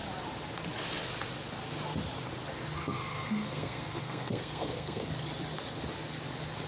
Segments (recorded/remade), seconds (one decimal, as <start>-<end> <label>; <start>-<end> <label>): 0.0-2.8 recorded; 2.8-5.1 remade; 5.1-6.7 recorded